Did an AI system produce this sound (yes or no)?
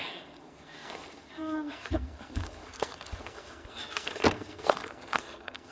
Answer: yes